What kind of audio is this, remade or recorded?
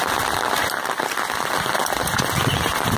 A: recorded